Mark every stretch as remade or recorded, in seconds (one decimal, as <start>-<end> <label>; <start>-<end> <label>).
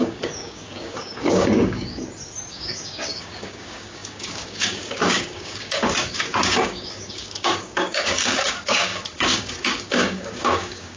0.0-2.0 remade; 2.0-2.5 recorded; 2.5-11.0 remade